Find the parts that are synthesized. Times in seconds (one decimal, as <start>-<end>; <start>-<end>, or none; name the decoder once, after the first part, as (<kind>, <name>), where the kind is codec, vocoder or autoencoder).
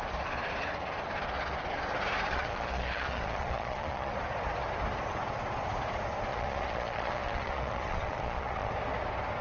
2.3-4.1 (vocoder, Vocos); 6.3-8.7